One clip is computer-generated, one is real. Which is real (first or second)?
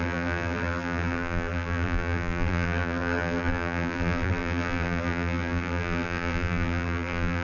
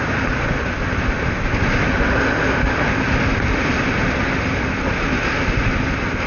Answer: second